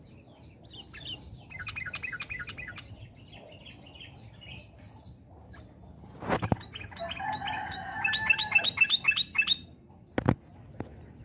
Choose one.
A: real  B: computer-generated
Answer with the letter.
A